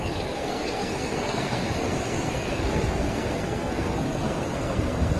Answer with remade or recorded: remade